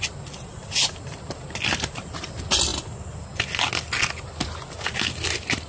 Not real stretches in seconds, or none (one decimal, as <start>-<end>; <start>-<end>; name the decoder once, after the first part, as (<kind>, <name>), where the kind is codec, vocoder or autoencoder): none